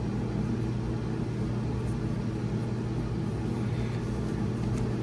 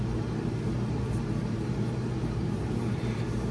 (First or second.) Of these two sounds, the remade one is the second